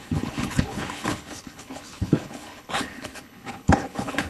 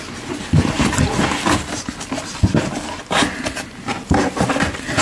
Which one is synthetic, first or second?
first